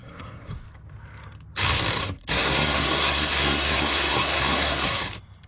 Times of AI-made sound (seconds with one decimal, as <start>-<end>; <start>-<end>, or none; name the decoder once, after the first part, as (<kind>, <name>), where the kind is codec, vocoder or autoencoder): 0.0-0.6 (codec, SNAC); 2.0-5.0